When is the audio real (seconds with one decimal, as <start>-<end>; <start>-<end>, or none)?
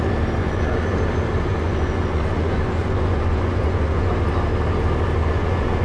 0.0-0.4; 1.0-1.5; 4.1-5.2